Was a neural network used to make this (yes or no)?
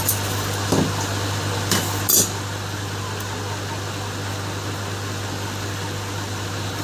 no